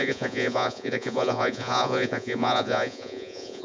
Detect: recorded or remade remade